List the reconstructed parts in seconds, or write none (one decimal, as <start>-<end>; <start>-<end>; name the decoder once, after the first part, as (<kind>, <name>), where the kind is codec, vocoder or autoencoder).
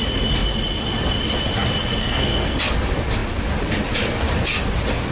2.0-2.6 (codec, SNAC)